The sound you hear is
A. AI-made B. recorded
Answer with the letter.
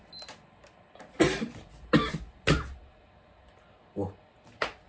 B